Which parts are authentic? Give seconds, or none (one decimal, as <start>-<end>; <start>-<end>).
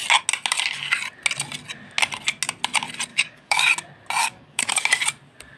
0.0-3.1; 3.6-4.2; 4.8-5.6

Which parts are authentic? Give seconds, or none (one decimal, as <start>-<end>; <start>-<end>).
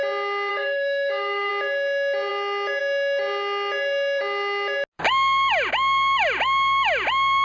0.0-0.5; 1.5-7.4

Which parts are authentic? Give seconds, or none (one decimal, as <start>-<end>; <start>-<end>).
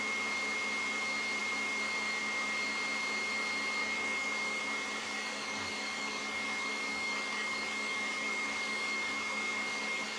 0.0-3.8; 4.6-5.0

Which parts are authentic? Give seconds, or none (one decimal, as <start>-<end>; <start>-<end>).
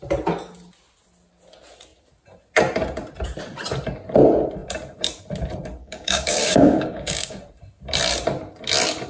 0.0-5.8; 7.4-9.1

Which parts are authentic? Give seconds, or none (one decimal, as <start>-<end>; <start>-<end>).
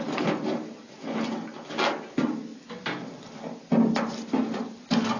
0.0-5.2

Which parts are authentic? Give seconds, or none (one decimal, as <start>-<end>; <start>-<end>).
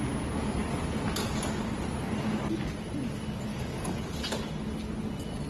0.0-3.5; 4.0-5.5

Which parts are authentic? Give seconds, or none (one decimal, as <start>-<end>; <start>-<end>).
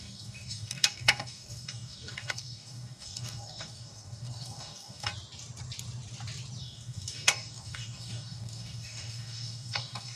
5.1-6.6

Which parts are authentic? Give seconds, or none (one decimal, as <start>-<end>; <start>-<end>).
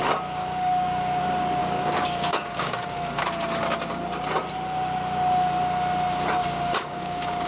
0.0-0.4; 1.2-1.6; 3.2-6.4